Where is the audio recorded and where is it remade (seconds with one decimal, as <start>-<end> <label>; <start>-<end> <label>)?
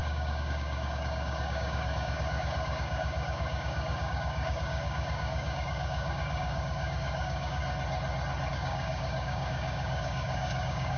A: 0.0-7.6 remade; 7.6-8.5 recorded; 8.5-11.0 remade